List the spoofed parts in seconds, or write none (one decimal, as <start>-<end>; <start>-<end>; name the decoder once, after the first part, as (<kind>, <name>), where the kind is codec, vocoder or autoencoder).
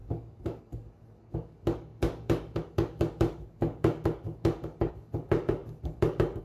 0.0-6.4 (codec, DAC)